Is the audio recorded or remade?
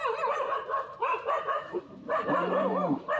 remade